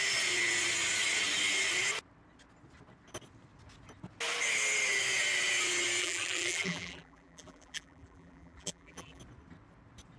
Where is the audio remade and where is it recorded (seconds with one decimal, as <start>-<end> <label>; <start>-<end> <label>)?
0.0-6.0 recorded; 6.0-9.2 remade; 9.2-10.2 recorded